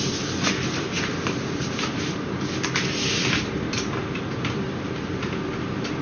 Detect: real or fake fake